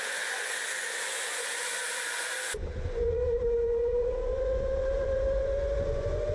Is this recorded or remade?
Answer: remade